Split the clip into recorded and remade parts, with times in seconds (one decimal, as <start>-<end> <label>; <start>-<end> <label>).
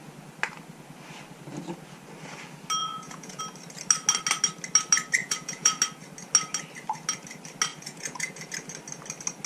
0.0-2.8 recorded; 2.8-3.4 remade; 3.4-5.2 recorded; 5.2-5.8 remade; 5.8-7.7 recorded; 7.7-8.5 remade; 8.5-9.5 recorded